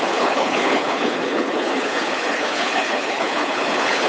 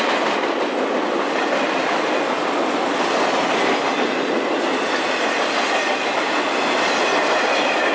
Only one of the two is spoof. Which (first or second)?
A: first